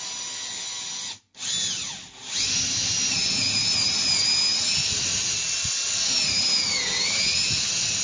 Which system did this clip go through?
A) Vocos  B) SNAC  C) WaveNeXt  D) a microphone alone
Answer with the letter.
D